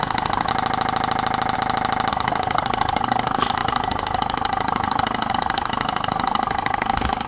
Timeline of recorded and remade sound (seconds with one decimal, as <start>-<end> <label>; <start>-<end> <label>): 0.0-0.5 remade; 0.5-2.1 recorded; 2.1-7.3 remade